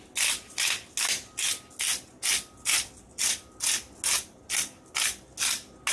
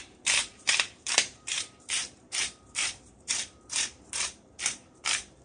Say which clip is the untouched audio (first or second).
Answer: first